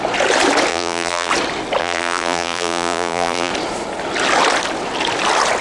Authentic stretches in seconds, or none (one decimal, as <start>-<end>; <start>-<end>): 0.0-0.7; 1.3-1.8; 3.5-5.6